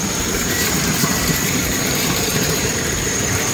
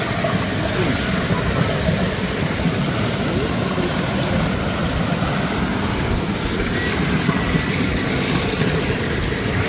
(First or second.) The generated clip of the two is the first